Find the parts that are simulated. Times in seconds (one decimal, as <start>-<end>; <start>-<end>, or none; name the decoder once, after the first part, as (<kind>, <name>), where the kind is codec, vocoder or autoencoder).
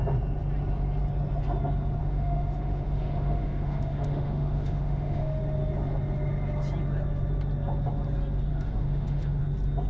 2.0-5.4 (autoencoder, DAC-VAE); 8.5-9.4